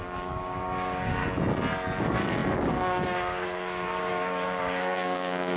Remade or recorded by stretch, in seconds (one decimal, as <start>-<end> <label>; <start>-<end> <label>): 0.0-1.2 remade; 1.2-2.0 recorded; 2.0-5.6 remade